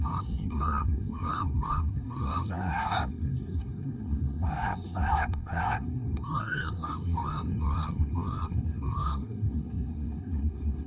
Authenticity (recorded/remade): remade